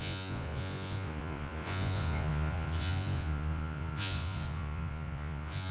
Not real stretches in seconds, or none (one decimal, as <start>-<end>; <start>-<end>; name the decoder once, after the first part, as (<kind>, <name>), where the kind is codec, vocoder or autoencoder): 0.0-5.7 (vocoder, Vocos)